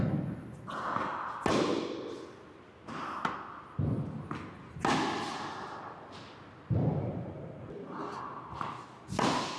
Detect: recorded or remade recorded